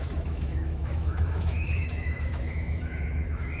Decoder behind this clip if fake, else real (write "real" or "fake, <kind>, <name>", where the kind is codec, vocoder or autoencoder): fake, autoencoder, DAC-VAE